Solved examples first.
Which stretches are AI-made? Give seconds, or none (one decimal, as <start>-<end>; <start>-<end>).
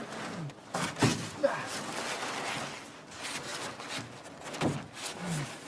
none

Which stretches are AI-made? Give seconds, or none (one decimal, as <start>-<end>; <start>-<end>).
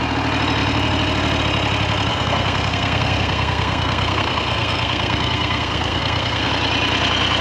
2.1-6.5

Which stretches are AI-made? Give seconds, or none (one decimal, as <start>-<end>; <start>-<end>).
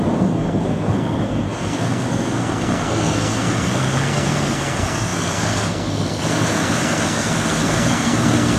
0.0-8.6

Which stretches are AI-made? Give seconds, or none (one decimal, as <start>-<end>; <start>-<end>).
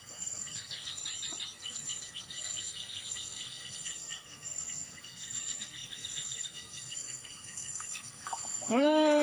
0.0-1.0; 1.6-9.2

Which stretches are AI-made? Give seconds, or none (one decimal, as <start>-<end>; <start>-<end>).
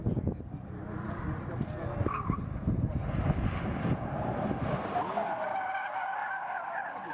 none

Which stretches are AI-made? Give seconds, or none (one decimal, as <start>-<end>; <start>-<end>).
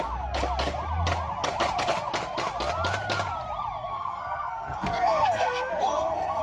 3.9-6.4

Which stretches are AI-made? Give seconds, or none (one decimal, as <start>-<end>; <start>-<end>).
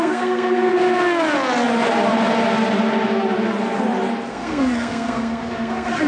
0.0-0.7; 4.3-6.1